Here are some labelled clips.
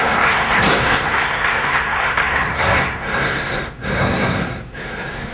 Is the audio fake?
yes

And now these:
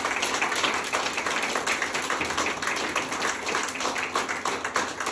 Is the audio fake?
no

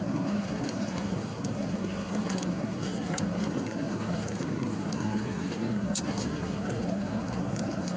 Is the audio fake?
yes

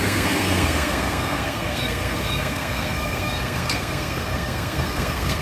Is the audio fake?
yes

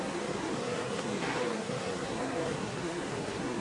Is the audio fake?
yes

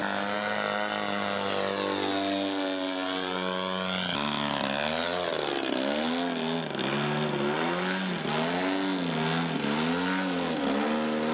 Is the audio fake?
no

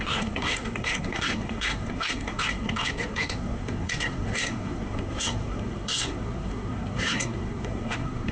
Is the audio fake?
yes